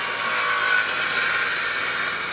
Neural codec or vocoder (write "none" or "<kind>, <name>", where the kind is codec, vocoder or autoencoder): none